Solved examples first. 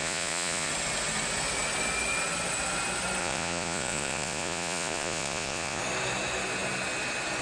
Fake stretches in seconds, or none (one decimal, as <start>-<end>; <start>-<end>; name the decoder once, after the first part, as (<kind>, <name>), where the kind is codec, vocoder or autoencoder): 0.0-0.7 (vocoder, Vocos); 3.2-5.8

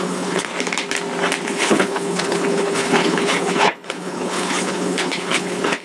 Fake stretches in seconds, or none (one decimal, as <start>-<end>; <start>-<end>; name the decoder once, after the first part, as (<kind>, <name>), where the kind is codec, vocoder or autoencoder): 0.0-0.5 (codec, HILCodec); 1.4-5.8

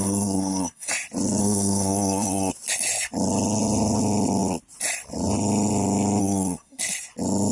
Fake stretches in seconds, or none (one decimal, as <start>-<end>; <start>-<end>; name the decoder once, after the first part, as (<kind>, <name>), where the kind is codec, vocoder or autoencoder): 0.0-0.9 (codec, SNAC); 1.4-2.5; 6.2-6.8

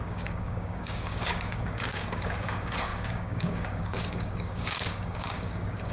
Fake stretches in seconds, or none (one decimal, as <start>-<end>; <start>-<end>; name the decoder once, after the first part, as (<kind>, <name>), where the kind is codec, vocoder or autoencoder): 0.0-5.9 (codec, DAC)

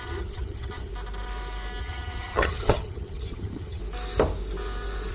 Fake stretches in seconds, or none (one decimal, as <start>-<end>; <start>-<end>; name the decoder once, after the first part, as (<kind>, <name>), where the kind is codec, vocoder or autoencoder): 0.0-0.9 (vocoder, HiFi-GAN); 1.8-3.8

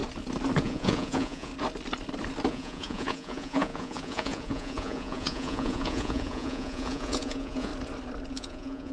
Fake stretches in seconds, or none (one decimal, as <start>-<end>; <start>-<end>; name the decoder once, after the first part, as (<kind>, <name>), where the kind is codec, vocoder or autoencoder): 0.6-1.5 (vocoder, Vocos); 2.5-7.7; 8.3-8.9